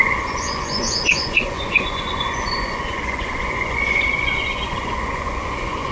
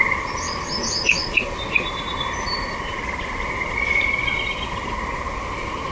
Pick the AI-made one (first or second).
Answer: first